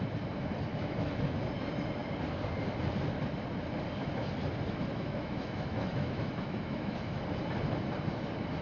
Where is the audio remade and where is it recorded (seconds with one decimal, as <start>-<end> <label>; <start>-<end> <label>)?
0.0-0.7 recorded; 0.7-1.5 remade; 1.5-4.9 recorded; 4.9-7.2 remade; 7.2-8.6 recorded